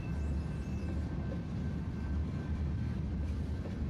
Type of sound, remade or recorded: remade